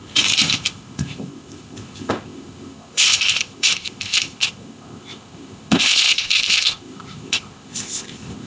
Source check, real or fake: fake